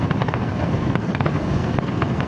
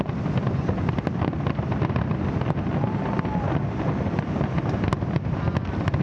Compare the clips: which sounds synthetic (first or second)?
first